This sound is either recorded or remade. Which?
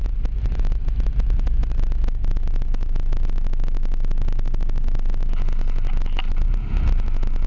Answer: recorded